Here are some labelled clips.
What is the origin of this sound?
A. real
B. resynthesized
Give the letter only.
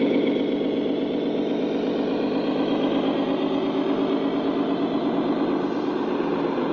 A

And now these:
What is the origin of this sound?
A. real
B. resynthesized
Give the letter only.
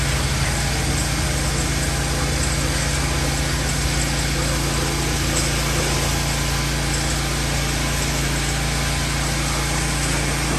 A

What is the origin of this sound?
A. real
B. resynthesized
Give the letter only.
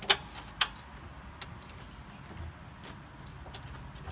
A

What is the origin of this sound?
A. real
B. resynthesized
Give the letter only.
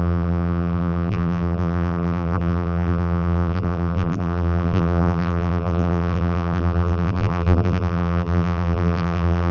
B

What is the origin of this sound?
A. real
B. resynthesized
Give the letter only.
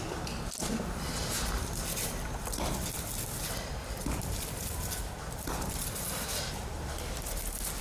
B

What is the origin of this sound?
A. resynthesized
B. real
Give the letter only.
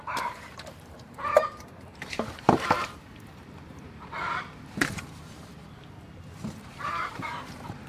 A